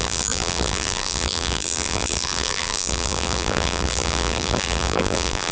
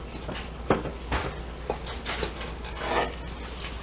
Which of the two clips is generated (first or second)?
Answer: first